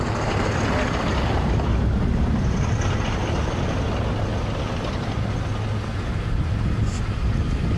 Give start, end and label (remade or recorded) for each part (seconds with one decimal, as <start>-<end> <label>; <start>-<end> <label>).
0.0-7.8 recorded